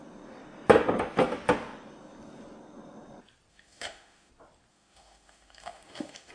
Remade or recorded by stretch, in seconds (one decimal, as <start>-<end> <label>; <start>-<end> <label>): 0.0-3.5 recorded; 3.5-4.3 remade; 4.3-4.7 recorded; 4.7-6.3 remade